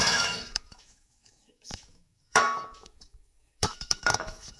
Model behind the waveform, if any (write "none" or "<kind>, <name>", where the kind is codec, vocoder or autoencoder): autoencoder, DAC-VAE